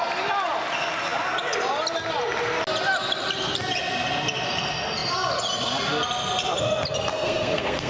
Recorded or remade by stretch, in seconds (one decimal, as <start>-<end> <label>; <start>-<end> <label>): 0.0-7.1 recorded; 7.1-7.9 remade